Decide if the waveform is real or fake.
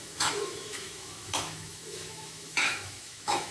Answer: fake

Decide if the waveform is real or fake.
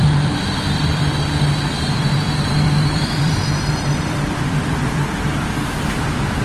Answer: fake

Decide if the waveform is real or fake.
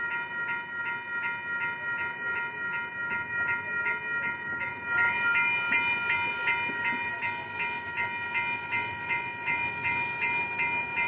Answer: real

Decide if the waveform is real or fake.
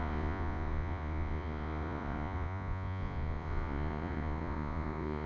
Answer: fake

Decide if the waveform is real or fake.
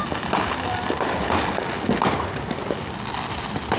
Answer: real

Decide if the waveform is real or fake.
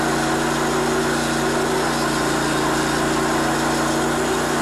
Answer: real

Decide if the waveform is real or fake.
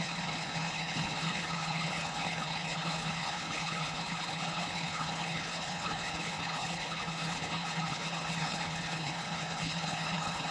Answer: fake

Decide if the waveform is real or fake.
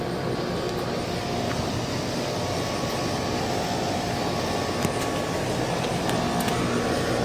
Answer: real